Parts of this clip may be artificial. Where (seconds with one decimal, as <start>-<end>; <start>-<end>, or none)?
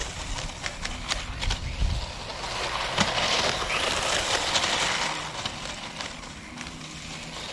none